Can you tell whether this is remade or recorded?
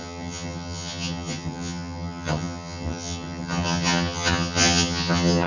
remade